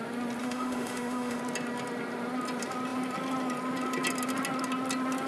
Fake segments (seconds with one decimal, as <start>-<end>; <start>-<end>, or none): 0.4-1.4